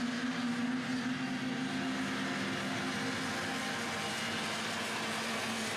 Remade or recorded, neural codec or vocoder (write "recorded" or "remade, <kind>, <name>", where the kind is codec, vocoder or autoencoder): recorded